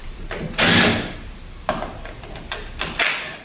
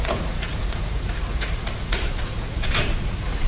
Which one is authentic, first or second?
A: first